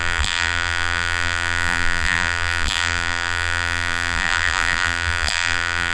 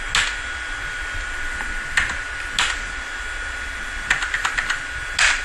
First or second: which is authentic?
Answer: second